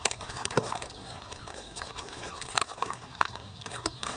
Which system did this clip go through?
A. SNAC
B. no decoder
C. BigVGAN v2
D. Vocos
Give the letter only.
A